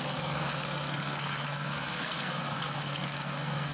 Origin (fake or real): fake